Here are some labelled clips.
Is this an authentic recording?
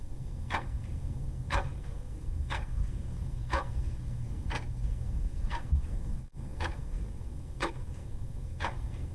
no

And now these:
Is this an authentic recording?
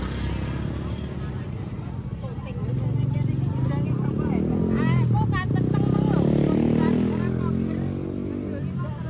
yes